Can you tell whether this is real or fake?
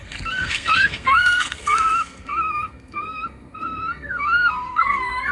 fake